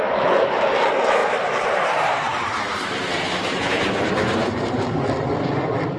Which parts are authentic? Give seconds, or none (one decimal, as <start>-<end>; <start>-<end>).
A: 0.0-1.2; 4.8-6.0